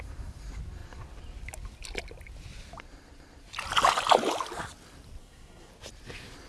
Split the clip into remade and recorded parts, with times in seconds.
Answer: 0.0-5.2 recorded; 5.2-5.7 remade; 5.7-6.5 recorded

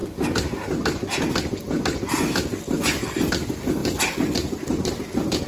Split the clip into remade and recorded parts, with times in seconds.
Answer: 0.0-5.5 recorded

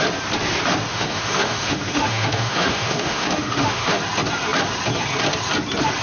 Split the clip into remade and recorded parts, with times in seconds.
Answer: 0.0-0.9 recorded; 0.9-4.0 remade; 4.0-6.0 recorded

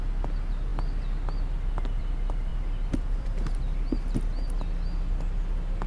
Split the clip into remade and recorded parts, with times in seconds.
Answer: 0.0-2.5 recorded; 2.5-3.6 remade; 3.6-5.9 recorded